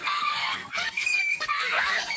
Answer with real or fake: fake